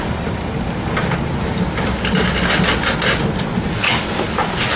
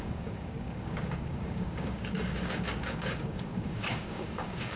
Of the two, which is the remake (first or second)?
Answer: second